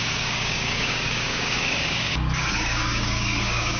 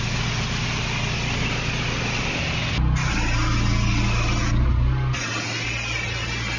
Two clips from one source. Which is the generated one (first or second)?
first